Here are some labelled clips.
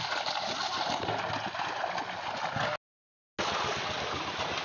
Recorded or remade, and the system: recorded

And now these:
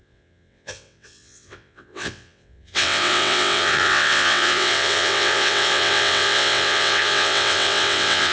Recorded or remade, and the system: remade, vocoder, WaveNeXt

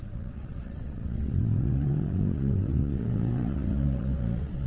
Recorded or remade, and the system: remade, vocoder, WaveNeXt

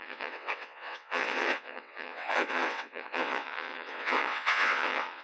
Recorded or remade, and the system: remade, vocoder, WaveNeXt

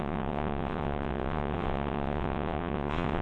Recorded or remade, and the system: remade, vocoder, WaveNeXt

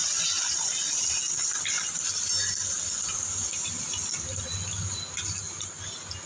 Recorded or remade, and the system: recorded